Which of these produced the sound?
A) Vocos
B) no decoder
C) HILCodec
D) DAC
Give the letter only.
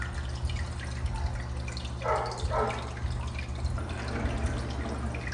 B